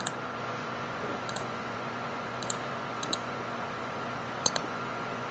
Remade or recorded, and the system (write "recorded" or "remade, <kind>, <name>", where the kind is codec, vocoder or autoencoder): remade, vocoder, Vocos